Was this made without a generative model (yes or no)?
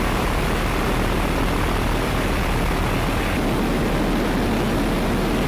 yes